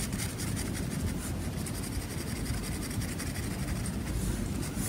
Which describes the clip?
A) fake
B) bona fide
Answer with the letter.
B